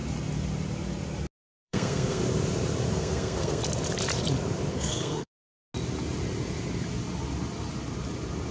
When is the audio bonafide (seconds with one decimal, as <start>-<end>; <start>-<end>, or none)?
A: 0.0-1.5; 2.2-2.9; 3.6-4.7; 5.5-8.5